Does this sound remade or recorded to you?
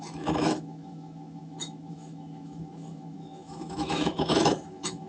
remade